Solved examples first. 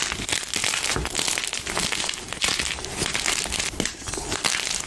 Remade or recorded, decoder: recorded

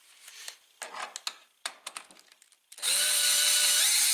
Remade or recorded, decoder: recorded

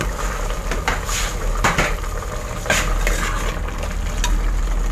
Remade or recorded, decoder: recorded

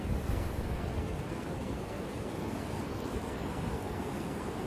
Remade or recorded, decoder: remade, codec, SNAC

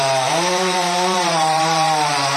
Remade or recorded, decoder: remade, vocoder, BigVGAN v2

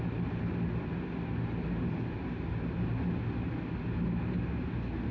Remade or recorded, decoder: recorded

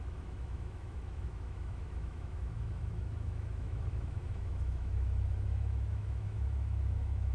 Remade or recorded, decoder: remade, autoencoder, DAC-VAE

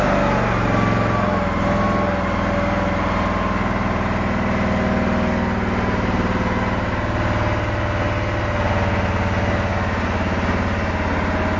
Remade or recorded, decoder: recorded